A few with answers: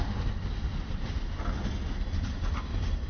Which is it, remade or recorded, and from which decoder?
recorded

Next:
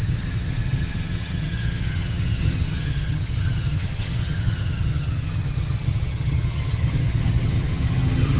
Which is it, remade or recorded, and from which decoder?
remade, vocoder, HiFi-GAN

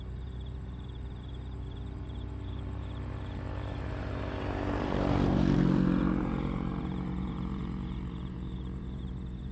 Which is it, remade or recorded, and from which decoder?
remade, vocoder, BigVGAN v2